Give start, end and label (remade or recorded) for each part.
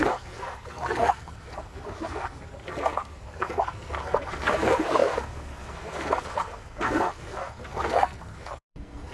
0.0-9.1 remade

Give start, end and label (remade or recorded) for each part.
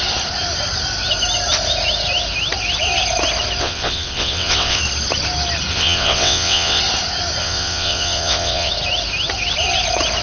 0.0-3.6 recorded; 3.6-4.8 remade; 4.8-5.7 recorded; 5.7-6.8 remade; 6.8-7.4 recorded; 7.4-8.7 remade; 8.7-10.2 recorded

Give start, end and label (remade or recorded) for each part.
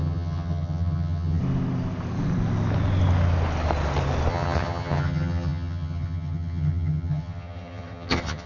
0.0-1.4 remade; 1.4-4.3 recorded; 4.3-8.5 remade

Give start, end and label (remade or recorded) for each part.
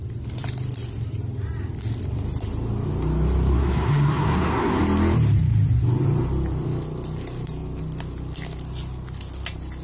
0.0-3.5 recorded; 3.5-4.8 remade; 4.8-9.8 recorded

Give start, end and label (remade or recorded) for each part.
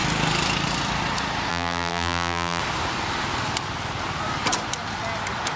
0.0-1.5 recorded; 1.5-2.6 remade; 2.6-5.6 recorded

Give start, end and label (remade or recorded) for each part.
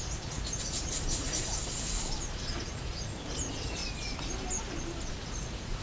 0.0-1.6 remade; 1.6-2.3 recorded; 2.3-3.8 remade; 3.8-5.1 recorded; 5.1-5.8 remade